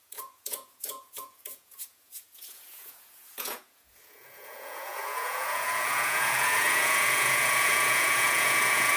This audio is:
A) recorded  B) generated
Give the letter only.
B